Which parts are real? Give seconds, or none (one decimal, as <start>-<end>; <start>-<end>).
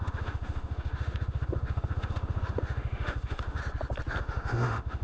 3.6-4.2